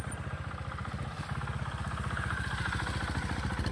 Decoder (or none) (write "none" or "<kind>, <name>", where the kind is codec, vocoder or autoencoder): none